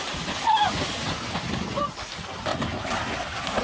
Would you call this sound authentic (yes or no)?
yes